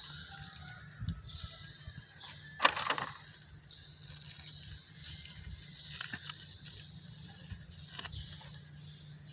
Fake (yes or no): no